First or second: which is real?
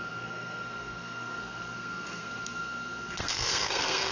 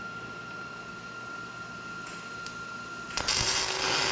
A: second